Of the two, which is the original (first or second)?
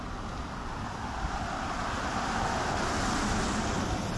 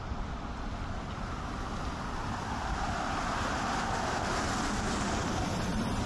first